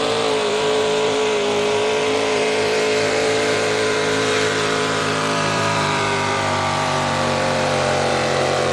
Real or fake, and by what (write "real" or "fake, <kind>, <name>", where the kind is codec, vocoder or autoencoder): fake, vocoder, BigVGAN v2